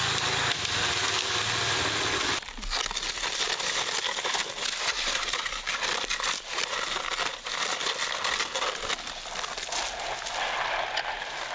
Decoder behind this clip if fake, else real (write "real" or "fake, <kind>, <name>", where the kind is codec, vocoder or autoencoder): real